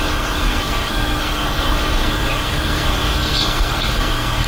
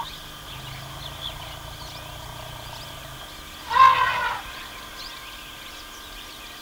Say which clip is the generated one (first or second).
first